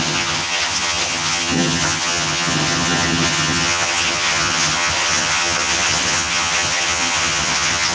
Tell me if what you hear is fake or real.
fake